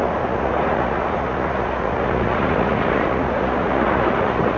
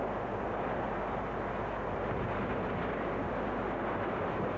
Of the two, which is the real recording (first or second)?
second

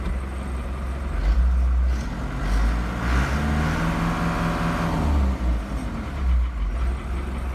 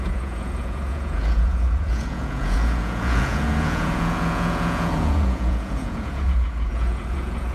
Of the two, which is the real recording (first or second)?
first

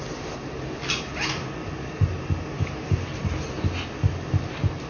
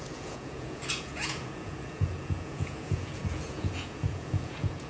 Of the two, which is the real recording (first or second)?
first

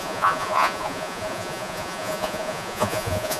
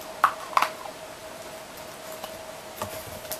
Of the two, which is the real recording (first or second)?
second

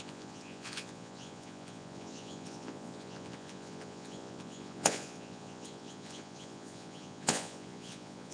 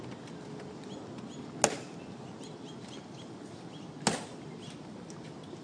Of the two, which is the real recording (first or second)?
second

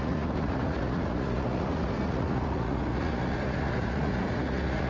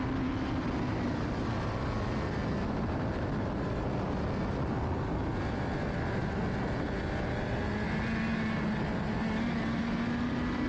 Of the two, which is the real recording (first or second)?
second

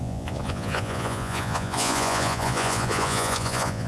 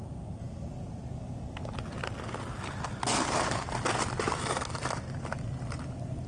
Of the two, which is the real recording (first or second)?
second